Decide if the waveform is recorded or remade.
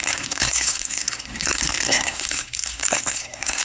remade